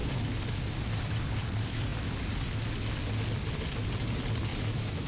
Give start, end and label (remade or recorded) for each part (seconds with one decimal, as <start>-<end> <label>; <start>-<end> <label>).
0.0-4.5 recorded; 4.5-5.1 remade